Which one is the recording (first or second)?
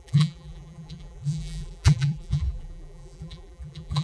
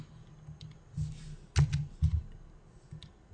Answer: second